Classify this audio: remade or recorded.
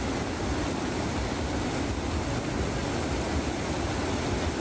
recorded